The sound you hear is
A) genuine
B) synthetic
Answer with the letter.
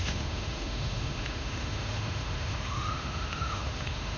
B